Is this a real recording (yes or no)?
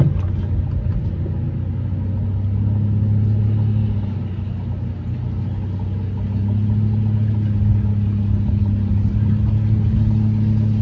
yes